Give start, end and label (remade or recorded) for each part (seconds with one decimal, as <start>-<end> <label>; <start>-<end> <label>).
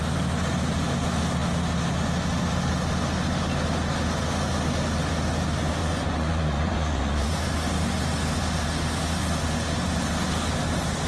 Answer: 0.0-5.8 recorded; 5.8-7.3 remade; 7.3-11.1 recorded